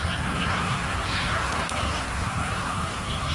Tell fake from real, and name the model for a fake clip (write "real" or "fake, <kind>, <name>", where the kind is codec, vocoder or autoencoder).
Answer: fake, codec, SNAC